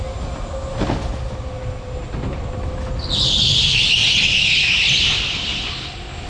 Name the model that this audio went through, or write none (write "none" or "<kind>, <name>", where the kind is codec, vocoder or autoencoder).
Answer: none